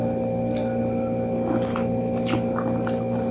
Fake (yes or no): no